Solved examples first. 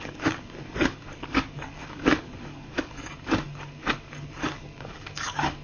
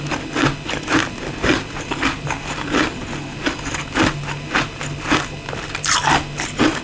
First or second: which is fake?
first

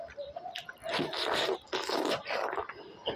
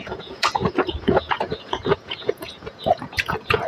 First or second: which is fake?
second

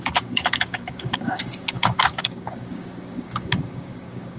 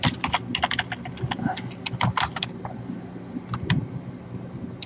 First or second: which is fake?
first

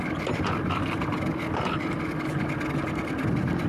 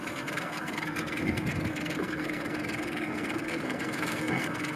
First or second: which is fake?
second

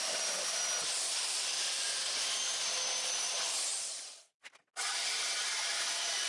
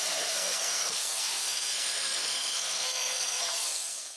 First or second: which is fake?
second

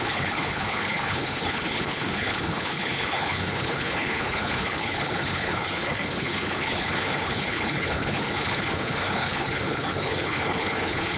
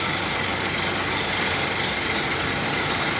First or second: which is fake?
first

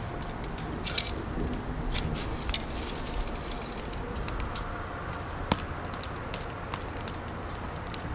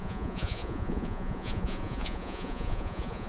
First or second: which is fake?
second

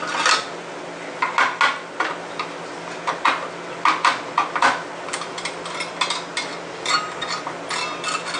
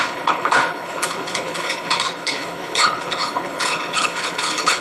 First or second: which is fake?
second